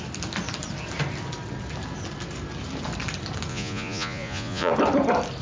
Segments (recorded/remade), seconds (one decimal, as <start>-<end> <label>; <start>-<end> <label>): 0.0-3.5 recorded; 3.5-4.7 remade; 4.7-5.4 recorded